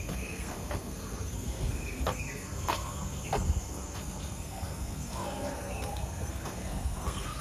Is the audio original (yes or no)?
no